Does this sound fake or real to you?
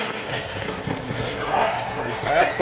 fake